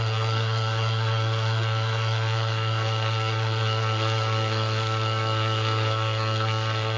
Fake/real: fake